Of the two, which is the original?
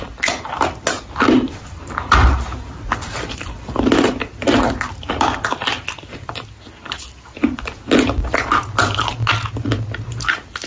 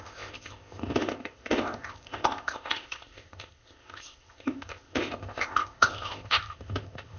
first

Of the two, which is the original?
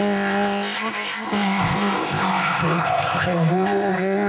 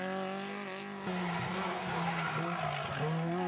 second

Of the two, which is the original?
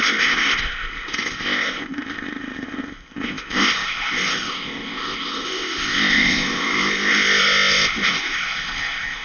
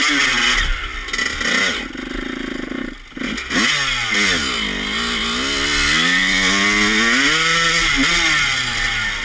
second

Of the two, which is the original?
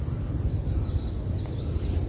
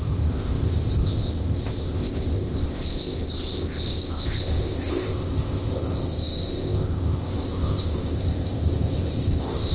first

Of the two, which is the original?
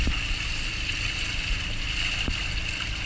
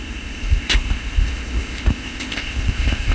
first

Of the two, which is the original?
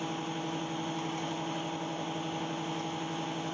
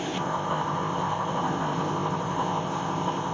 first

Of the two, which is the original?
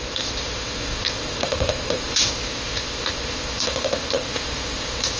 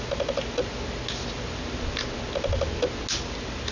second